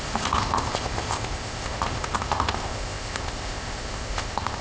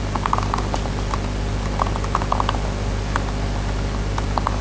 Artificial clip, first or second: first